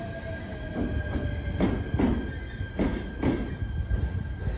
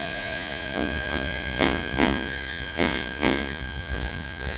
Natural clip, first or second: first